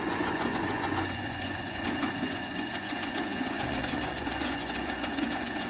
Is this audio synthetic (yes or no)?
yes